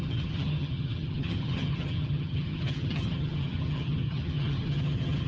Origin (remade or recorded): remade